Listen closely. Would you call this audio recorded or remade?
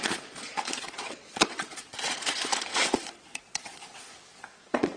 remade